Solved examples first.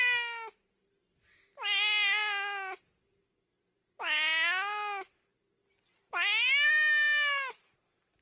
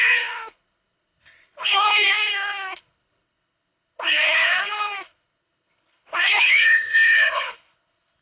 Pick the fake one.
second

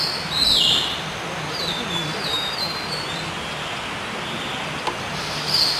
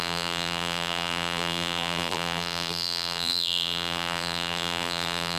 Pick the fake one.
second